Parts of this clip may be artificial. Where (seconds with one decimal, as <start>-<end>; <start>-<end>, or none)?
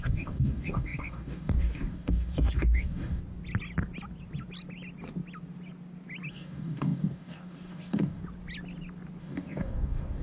0.0-3.2; 6.3-8.2; 9.2-10.2